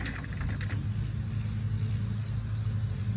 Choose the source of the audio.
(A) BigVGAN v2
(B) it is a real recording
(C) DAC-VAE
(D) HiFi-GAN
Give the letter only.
B